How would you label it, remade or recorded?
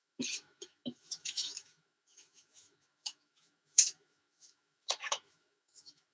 remade